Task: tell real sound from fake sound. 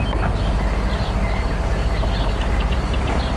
real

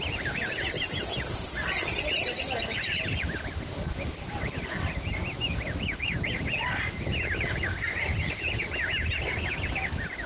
real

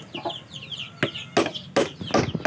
real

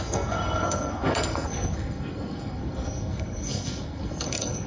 fake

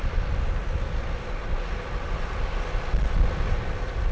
real